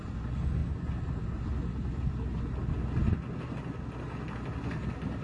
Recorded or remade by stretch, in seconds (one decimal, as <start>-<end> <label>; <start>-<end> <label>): 0.0-0.6 recorded; 0.6-2.1 remade; 2.1-5.2 recorded